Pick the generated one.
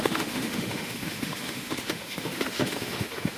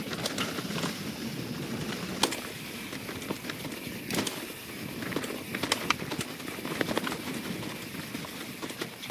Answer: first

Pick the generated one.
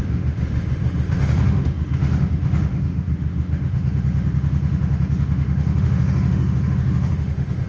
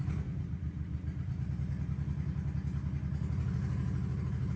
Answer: first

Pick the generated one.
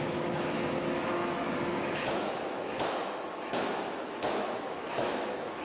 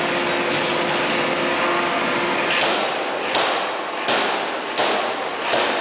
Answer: first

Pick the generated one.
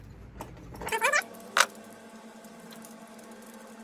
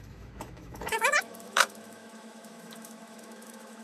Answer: second